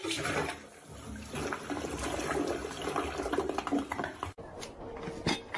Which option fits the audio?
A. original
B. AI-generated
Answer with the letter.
A